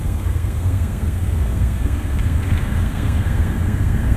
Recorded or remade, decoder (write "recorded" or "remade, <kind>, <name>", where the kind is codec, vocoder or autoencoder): remade, codec, SNAC